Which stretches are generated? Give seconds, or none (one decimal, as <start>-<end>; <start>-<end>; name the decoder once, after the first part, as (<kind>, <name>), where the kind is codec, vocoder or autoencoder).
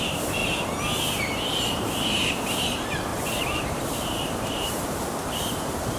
0.0-0.4 (vocoder, BigVGAN v2); 1.6-6.0